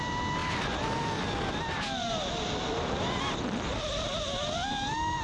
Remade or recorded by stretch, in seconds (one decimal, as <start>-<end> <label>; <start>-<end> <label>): 0.0-5.2 recorded